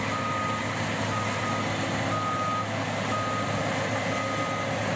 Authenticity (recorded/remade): recorded